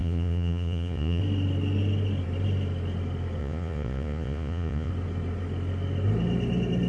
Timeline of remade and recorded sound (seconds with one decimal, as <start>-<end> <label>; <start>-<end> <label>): 0.0-1.2 remade; 1.2-3.4 recorded; 3.4-4.9 remade; 4.9-6.9 recorded